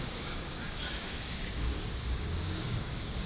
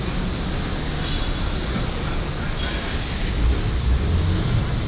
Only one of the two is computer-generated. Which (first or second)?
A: first